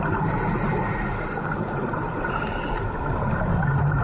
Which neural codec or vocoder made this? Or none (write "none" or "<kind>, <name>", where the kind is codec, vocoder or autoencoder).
none